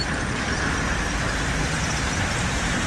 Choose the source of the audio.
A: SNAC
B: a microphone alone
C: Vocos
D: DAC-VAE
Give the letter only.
B